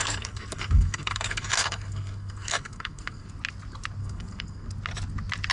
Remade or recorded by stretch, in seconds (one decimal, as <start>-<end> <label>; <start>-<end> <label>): 0.0-3.3 remade; 3.3-4.0 recorded; 4.0-4.7 remade; 4.7-5.5 recorded

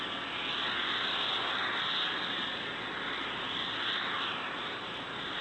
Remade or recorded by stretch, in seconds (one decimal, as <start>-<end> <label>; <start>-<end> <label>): 0.0-5.4 recorded

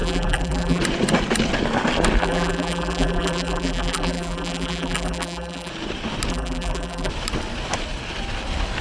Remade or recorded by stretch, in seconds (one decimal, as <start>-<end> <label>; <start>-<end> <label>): 0.0-0.8 remade; 0.8-2.2 recorded; 2.2-5.7 remade; 5.7-6.3 recorded; 6.3-7.1 remade; 7.1-8.8 recorded

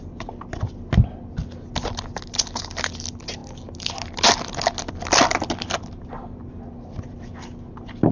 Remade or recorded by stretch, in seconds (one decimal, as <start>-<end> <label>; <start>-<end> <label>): 0.0-8.1 recorded

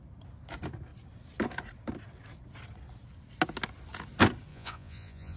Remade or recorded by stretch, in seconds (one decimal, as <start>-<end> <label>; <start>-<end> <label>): 0.0-4.5 recorded; 4.5-5.4 remade

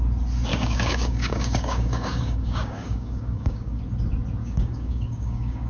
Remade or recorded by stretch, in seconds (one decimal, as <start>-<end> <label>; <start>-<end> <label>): 0.0-0.5 recorded; 0.5-3.8 remade; 3.8-4.4 recorded; 4.4-5.7 remade

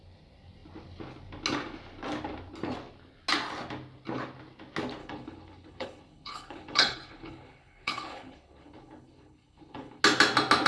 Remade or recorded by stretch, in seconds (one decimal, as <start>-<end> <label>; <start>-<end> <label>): 0.0-5.0 recorded; 5.0-10.0 remade; 10.0-10.7 recorded